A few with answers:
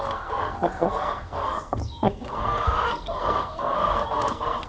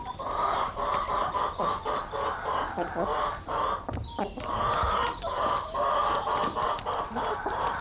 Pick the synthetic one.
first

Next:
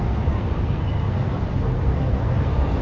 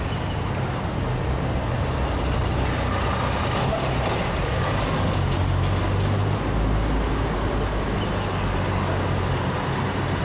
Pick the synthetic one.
first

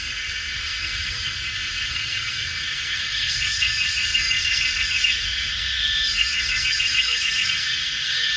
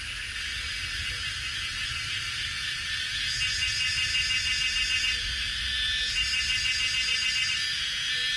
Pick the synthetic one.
first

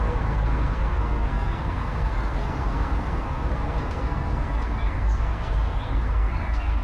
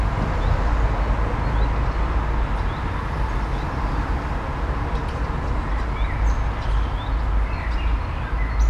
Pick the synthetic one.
first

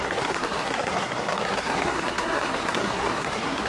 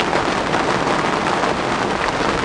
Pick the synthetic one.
first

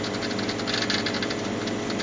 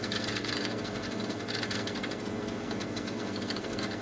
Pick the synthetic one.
second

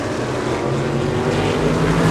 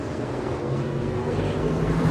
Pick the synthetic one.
second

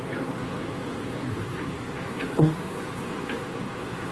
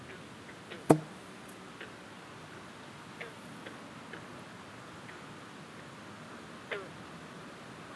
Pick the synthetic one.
first